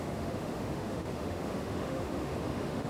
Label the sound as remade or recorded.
remade